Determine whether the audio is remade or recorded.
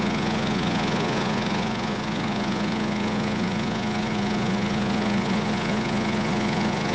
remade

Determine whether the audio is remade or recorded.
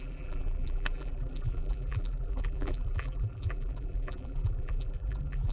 remade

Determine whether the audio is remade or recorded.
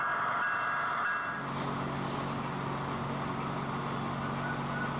recorded